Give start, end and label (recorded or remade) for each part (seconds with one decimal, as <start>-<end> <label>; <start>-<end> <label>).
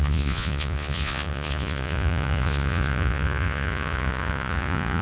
0.0-5.0 remade